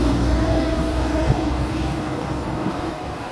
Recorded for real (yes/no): no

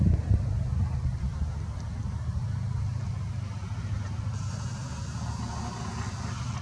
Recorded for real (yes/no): yes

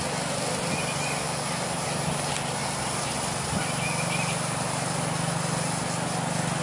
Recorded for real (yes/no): yes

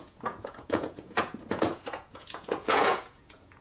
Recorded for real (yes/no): no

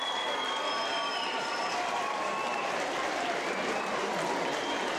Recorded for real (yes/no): no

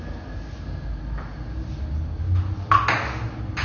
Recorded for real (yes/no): yes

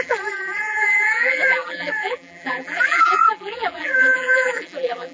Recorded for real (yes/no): no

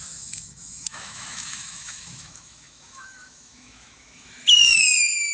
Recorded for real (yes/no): no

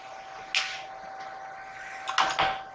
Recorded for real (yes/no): yes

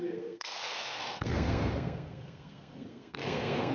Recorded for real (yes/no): no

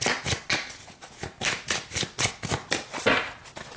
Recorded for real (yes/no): yes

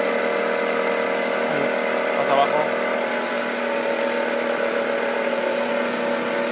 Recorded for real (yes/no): yes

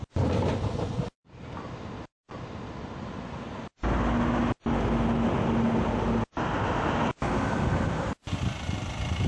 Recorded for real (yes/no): yes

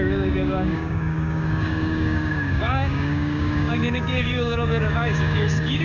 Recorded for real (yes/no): no